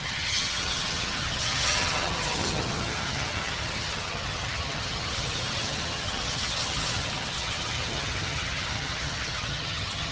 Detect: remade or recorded remade